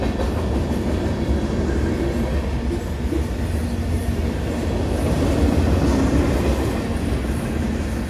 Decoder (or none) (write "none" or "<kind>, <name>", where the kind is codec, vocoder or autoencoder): none